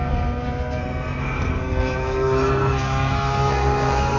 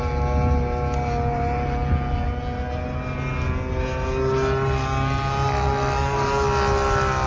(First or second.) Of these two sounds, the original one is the second